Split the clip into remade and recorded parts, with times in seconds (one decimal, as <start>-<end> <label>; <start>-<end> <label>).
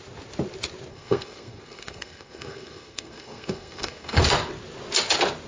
0.0-0.9 recorded; 0.9-4.2 remade; 4.2-5.5 recorded